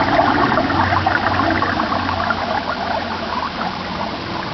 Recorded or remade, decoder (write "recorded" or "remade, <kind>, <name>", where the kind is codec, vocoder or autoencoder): recorded